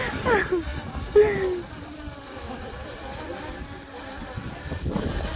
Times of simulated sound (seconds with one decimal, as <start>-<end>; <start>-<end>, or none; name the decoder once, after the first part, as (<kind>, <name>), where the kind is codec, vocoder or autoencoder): 0.0-0.7 (vocoder, BigVGAN v2); 2.2-3.3; 4.2-5.4